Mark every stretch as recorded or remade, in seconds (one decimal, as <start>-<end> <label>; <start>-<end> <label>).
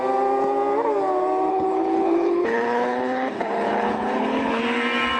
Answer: 0.0-1.5 recorded; 1.5-4.6 remade; 4.6-5.2 recorded